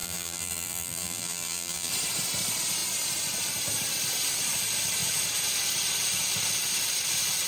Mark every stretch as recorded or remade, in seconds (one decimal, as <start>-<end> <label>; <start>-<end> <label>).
0.0-1.9 remade; 1.9-7.5 recorded